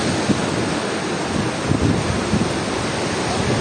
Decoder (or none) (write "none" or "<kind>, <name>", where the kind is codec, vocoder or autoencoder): none